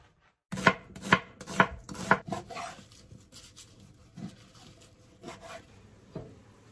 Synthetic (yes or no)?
no